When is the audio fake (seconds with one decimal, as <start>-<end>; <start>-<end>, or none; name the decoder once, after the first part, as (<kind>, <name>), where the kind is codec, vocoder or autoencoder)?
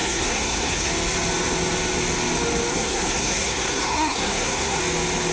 0.0-0.9 (codec, SNAC); 2.7-4.8